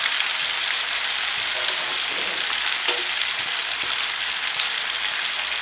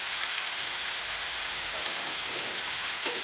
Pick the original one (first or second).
first